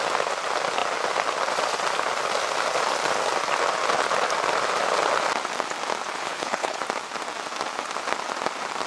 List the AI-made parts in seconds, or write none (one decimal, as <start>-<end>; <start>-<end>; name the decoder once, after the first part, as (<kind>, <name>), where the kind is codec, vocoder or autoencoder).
6.1-6.8 (codec, HILCodec)